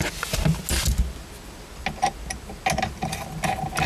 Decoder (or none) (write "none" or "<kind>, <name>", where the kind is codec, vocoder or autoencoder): none